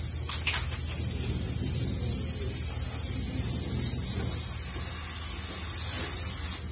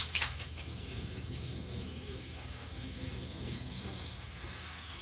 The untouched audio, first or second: first